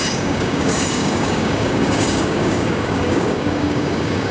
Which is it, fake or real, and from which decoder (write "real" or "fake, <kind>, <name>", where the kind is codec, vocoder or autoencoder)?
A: fake, codec, DAC